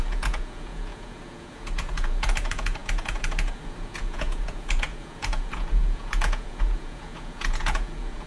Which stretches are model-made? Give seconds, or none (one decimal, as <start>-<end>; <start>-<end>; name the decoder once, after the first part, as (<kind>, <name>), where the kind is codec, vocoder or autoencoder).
0.0-8.3 (vocoder, Vocos)